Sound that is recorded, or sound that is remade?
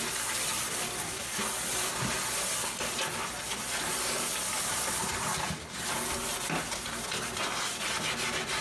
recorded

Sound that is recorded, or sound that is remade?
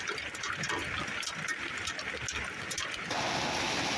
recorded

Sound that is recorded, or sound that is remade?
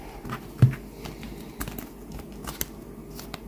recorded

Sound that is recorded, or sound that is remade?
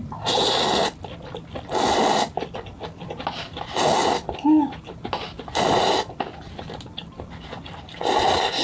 recorded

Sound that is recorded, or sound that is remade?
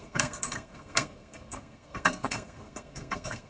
remade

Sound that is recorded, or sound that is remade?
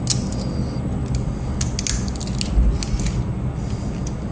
recorded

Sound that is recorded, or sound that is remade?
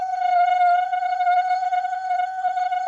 remade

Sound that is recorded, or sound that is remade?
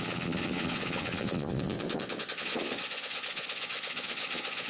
remade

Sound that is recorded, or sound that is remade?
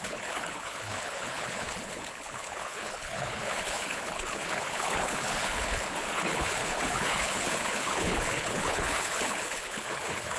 remade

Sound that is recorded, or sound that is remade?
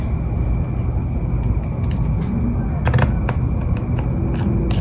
recorded